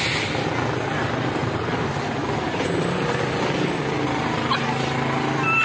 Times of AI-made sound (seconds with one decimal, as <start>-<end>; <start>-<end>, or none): none